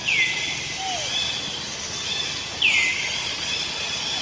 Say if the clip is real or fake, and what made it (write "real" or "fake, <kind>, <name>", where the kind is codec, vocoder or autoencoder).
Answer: real